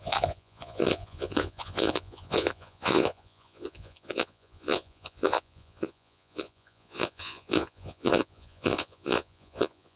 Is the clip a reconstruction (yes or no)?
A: yes